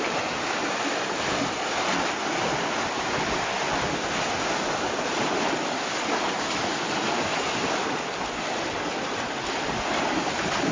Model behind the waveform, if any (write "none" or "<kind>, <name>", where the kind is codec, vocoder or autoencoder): vocoder, BigVGAN v2